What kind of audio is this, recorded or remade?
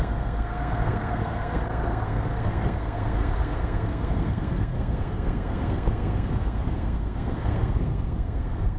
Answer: remade